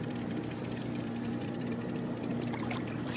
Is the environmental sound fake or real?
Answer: fake